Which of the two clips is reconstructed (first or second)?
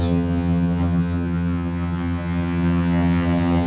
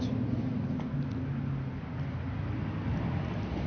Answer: first